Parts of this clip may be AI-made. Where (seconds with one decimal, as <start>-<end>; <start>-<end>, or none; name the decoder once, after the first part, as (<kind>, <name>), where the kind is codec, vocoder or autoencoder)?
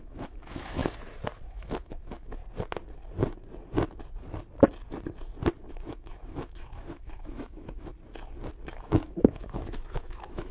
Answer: 0.0-0.8 (autoencoder, DAC-VAE); 1.5-2.4; 5.7-7.9; 8.7-10.5